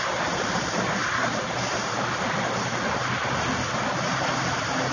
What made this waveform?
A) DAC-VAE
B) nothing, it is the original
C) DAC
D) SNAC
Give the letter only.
B